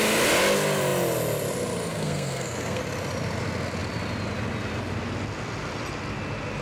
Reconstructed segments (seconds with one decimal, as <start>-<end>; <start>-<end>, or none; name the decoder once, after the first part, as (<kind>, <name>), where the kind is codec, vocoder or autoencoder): 1.9-2.8 (codec, SNAC)

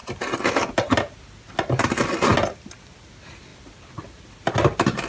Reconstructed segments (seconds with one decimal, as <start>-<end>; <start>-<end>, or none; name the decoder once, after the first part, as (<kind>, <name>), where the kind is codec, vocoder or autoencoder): none

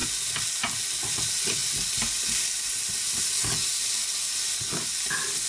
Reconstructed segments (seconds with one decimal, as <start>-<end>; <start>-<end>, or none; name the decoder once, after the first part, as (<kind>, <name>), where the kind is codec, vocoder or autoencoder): none

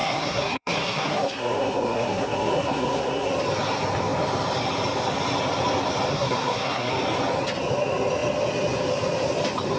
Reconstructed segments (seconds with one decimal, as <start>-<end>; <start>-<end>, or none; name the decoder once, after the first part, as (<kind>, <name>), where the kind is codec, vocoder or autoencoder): 0.0-3.3 (codec, SNAC); 6.1-6.9

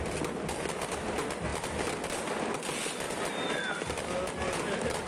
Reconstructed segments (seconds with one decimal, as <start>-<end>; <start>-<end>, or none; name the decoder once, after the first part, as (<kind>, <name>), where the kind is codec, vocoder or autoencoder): none

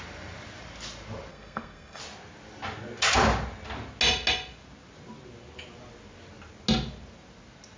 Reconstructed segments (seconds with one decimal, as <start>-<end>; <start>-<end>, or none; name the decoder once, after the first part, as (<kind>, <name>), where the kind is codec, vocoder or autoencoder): 1.3-2.0 (codec, SNAC)

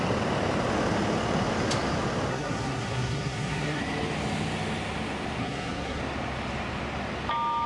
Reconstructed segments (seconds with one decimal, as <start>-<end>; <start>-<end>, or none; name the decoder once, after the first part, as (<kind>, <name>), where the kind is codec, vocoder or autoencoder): 2.3-3.8 (codec, SNAC); 5.4-6.0

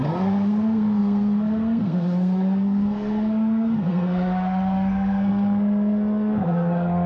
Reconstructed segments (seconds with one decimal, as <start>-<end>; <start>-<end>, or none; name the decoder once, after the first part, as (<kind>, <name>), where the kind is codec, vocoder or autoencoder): 0.0-7.1 (codec, SNAC)